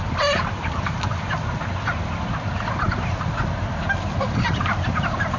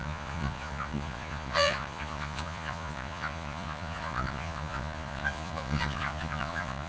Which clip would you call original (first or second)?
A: first